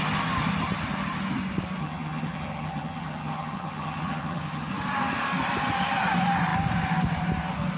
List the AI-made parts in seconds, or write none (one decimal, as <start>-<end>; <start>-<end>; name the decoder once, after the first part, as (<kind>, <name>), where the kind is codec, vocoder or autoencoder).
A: 1.8-4.7 (vocoder, HiFi-GAN)